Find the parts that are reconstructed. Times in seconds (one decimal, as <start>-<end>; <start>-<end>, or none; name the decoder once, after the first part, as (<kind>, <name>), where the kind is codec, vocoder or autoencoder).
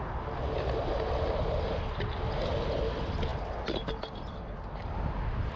none